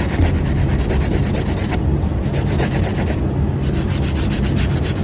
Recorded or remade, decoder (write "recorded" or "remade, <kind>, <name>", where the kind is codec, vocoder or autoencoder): recorded